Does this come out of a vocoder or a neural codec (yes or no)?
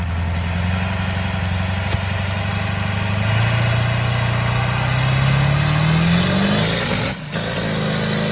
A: no